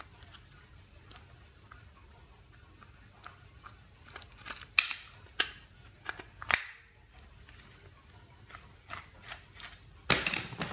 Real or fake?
real